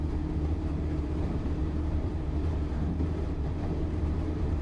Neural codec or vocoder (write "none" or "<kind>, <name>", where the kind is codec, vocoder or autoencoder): vocoder, BigVGAN v2